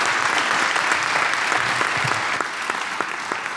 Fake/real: real